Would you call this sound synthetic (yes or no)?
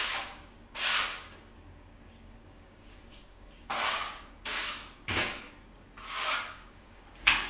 yes